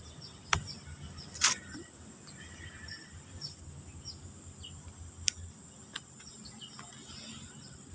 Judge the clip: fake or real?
real